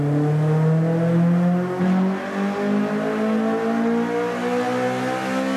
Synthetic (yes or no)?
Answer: no